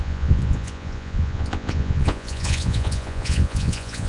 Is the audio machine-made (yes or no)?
yes